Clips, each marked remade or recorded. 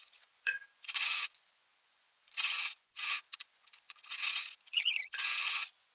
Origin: remade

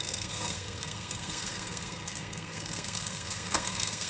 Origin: remade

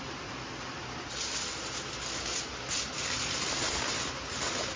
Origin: recorded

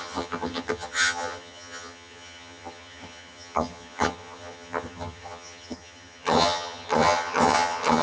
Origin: remade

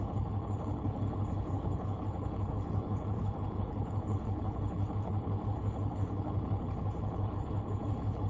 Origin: remade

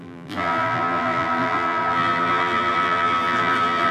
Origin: remade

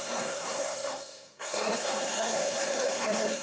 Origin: remade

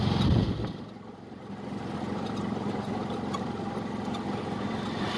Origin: recorded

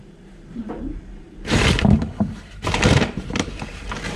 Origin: remade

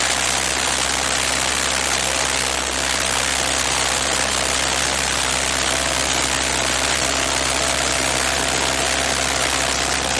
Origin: recorded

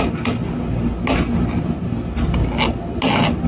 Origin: recorded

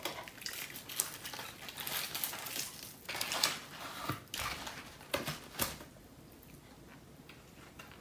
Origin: recorded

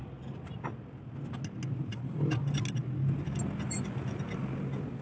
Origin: recorded